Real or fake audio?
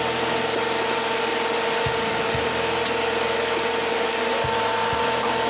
real